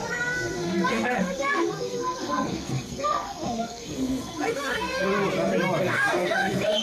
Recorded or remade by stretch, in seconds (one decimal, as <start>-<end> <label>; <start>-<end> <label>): 0.0-5.1 remade; 5.1-5.8 recorded; 5.8-6.8 remade